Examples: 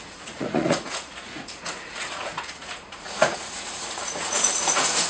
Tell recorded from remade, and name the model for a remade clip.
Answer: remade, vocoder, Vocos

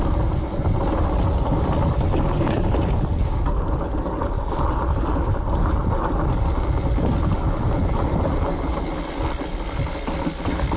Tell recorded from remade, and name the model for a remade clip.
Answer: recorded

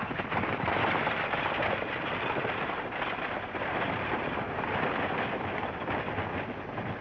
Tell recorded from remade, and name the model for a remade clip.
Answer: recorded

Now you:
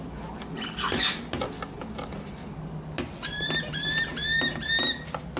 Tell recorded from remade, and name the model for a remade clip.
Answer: recorded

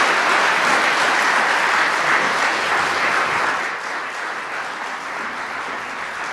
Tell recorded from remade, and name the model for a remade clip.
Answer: recorded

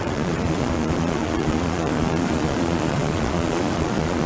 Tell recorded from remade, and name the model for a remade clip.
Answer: remade, vocoder, Vocos